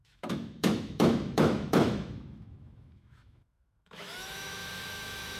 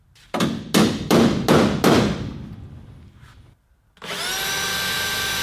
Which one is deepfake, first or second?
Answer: first